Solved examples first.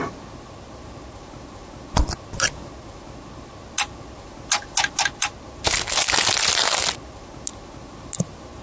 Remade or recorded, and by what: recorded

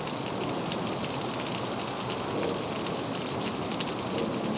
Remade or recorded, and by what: recorded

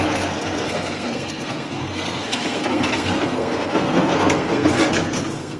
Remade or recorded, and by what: remade, codec, SNAC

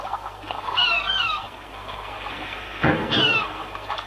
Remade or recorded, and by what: remade, codec, SNAC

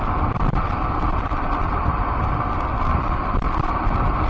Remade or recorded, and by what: recorded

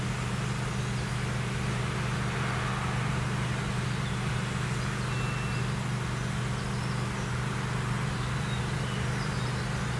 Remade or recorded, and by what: recorded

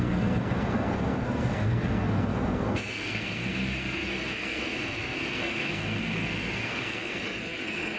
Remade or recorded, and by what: remade, codec, SNAC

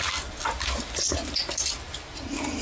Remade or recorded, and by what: recorded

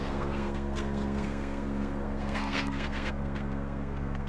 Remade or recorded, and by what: remade, codec, SNAC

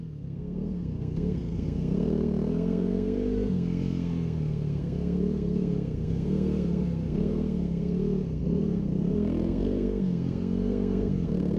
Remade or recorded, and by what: remade, codec, SNAC